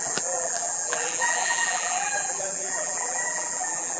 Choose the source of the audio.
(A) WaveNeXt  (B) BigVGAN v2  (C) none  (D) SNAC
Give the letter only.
B